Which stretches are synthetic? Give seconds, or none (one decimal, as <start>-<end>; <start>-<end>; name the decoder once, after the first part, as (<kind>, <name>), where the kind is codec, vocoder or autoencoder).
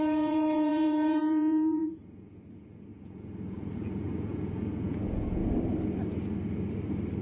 0.0-5.4 (vocoder, Vocos)